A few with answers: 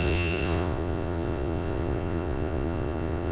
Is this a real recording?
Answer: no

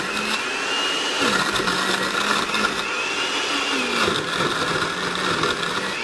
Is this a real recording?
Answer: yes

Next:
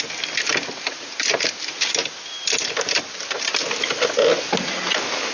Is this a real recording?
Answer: yes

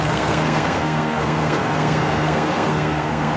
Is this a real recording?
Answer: no